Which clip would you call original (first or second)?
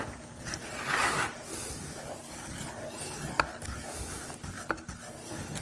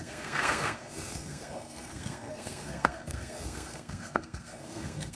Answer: first